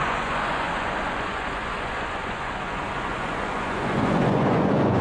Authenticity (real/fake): fake